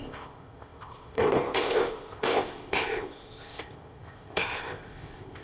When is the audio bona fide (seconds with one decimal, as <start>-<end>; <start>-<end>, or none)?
none